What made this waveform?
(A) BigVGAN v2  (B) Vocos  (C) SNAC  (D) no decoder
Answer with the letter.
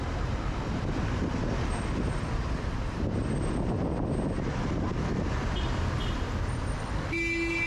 D